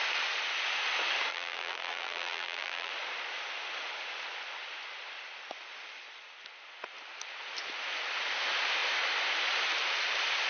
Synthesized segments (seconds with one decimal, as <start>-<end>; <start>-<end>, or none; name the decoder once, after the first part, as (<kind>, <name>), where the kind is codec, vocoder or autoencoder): 1.3-2.9 (vocoder, BigVGAN v2)

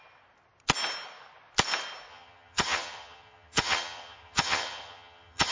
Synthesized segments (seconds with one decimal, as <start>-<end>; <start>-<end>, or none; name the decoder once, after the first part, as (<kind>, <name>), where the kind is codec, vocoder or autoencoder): 2.1-5.5 (vocoder, HiFi-GAN)

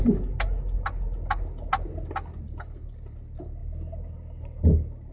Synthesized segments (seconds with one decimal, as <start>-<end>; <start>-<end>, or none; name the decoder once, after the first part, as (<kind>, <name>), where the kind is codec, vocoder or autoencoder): none

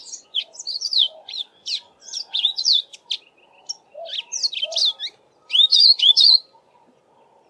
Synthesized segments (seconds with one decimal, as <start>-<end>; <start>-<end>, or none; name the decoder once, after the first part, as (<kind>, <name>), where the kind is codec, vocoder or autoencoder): 0.0-3.1 (vocoder, Vocos); 5.7-7.0